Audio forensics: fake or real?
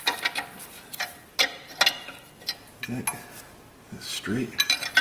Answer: real